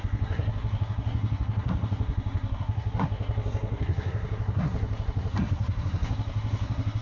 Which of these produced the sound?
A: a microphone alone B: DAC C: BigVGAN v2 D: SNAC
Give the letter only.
D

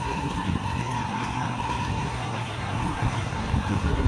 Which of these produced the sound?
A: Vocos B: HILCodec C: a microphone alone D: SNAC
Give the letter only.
D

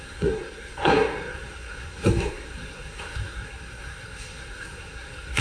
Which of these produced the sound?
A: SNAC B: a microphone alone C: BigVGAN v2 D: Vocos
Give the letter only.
A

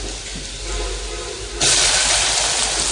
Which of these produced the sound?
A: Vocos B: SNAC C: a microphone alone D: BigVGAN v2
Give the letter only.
C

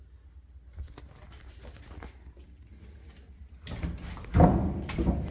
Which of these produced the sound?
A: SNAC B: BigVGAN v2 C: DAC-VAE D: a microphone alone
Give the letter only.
D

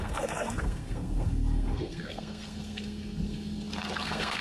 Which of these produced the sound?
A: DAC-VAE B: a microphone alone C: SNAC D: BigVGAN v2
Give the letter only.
C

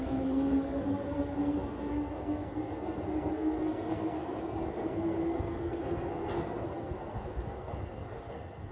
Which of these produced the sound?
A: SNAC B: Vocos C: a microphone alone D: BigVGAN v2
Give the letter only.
A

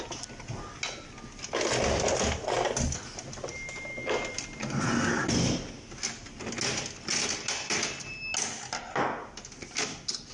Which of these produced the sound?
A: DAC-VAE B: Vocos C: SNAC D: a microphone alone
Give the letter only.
D